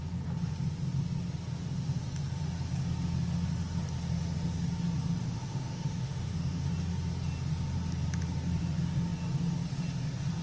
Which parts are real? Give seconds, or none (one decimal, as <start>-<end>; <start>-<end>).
0.0-5.2; 6.7-10.4